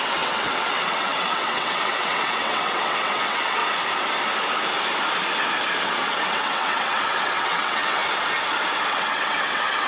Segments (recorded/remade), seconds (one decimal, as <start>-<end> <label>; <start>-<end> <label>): 0.0-3.6 remade; 3.6-5.8 recorded; 5.8-8.0 remade; 8.0-8.9 recorded; 8.9-9.9 remade